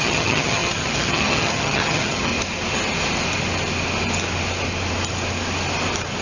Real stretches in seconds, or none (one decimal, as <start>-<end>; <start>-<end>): 2.3-6.2